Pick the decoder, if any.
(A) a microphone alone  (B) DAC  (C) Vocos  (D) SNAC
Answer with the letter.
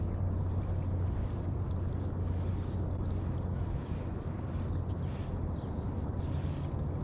A